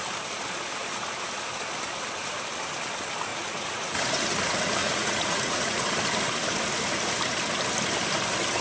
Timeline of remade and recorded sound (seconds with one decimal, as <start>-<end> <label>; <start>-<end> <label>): 0.0-3.3 recorded; 3.3-4.0 remade; 4.0-4.8 recorded; 4.8-5.8 remade; 5.8-8.6 recorded

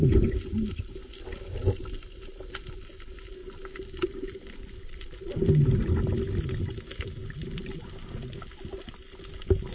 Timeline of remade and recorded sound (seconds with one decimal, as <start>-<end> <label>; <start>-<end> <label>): 0.0-9.7 recorded